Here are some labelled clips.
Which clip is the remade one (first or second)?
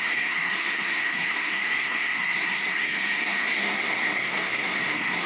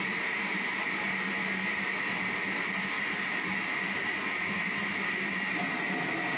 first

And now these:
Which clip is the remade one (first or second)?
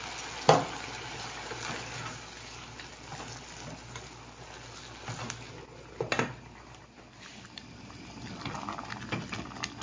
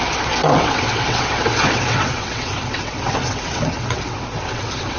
second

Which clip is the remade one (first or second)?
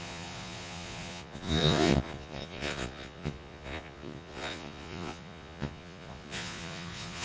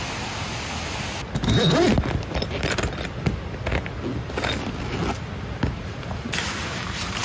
first